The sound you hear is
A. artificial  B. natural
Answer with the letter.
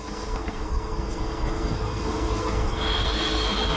A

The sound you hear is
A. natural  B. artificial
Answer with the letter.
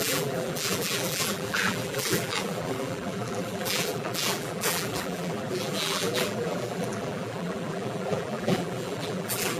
B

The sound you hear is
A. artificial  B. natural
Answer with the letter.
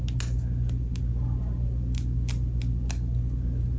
B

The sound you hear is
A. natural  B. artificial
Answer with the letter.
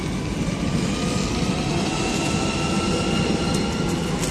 A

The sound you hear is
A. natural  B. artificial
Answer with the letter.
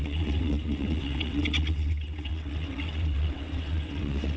B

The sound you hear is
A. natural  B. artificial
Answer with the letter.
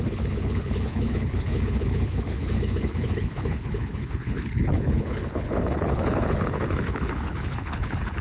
B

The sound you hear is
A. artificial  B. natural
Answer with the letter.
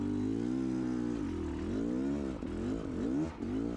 B